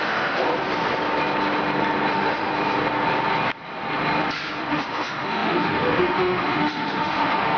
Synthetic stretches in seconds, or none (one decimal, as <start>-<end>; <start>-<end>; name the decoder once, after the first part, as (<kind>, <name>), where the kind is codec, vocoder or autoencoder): 0.0-0.5 (autoencoder, DAC-VAE); 2.1-2.5; 4.7-7.6